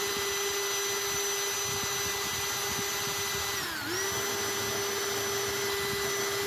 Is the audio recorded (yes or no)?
yes